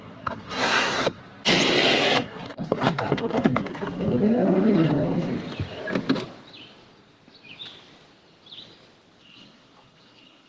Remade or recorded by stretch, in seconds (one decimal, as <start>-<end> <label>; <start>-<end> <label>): 0.0-1.2 remade; 1.2-2.0 recorded; 2.0-5.3 remade; 5.3-9.2 recorded; 9.2-10.5 remade